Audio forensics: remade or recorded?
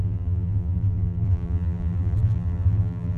remade